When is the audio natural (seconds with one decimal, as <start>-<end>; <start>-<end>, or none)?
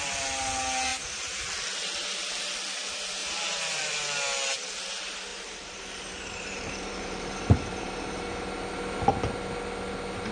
0.0-0.9; 1.5-3.2; 3.8-5.3; 8.3-10.3